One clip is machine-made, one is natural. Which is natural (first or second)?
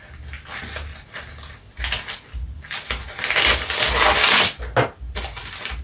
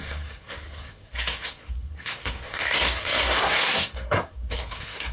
first